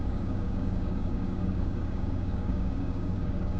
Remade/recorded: remade